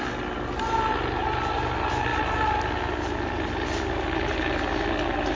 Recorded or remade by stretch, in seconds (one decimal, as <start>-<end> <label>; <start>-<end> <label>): 0.0-5.4 recorded